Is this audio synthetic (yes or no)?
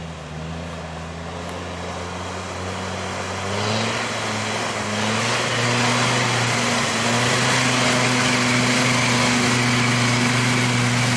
no